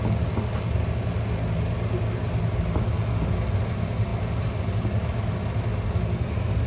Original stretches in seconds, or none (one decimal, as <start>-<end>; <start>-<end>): 0.0-6.7